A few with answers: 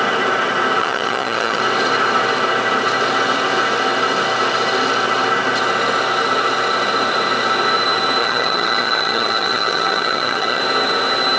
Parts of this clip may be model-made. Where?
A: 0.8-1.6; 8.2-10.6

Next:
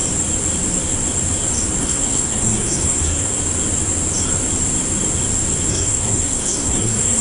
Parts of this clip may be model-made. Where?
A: 1.8-3.4; 5.7-7.2

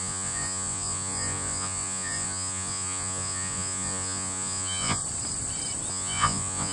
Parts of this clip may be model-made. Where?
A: 0.0-5.0; 5.9-6.7